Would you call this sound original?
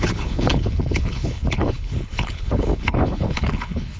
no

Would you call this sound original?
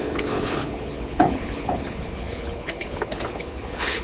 no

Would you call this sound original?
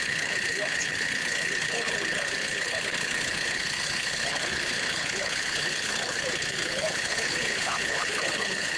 no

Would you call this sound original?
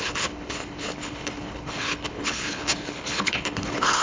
no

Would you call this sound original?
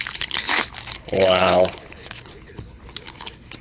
no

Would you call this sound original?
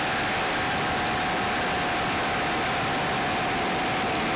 yes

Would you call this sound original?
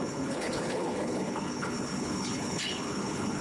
no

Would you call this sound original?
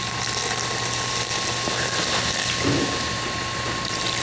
yes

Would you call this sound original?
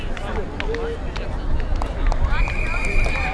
yes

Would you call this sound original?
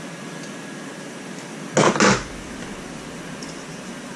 yes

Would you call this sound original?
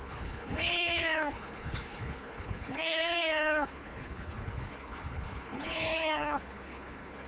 no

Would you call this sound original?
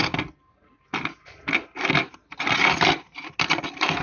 yes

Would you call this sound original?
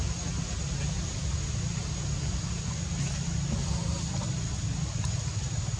yes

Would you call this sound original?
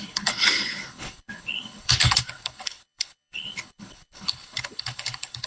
no